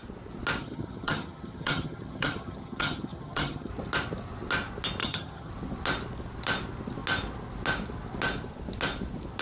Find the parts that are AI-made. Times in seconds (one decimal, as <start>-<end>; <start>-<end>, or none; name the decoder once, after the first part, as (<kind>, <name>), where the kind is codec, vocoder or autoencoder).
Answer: 0.6-3.7 (vocoder, HiFi-GAN); 5.0-5.5